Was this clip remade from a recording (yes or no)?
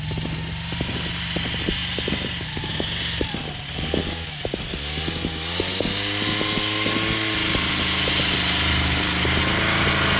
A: no